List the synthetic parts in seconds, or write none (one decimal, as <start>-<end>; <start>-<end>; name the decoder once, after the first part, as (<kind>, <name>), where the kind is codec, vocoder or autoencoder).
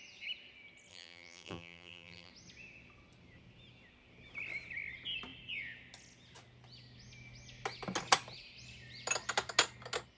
0.9-2.3 (vocoder, BigVGAN v2)